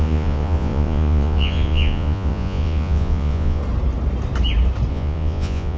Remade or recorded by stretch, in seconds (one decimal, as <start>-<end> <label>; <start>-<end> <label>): 0.0-3.6 remade; 3.6-4.9 recorded; 4.9-5.8 remade